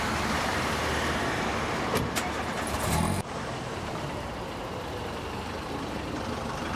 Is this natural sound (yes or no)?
no